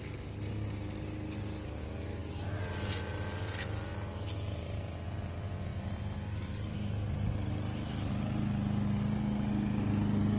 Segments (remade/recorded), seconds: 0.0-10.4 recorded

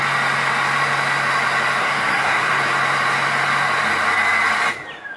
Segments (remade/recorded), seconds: 0.0-1.8 recorded; 1.8-2.5 remade; 2.5-5.2 recorded

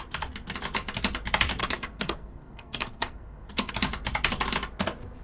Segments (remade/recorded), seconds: 0.0-1.6 recorded; 1.6-3.7 remade; 3.7-5.2 recorded

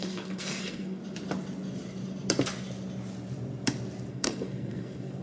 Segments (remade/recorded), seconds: 0.0-1.0 remade; 1.0-4.1 recorded; 4.1-5.2 remade

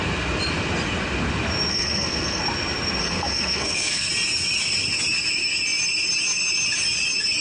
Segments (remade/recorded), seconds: 0.0-1.7 recorded; 1.7-2.4 remade; 2.4-3.0 recorded; 3.0-4.1 remade; 4.1-7.4 recorded